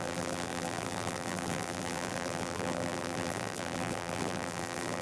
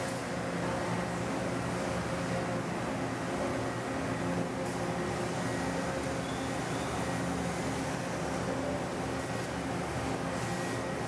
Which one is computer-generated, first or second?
first